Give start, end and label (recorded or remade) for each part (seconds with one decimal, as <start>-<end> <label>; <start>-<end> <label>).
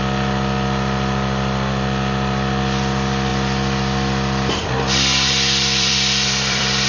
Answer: 0.0-6.9 remade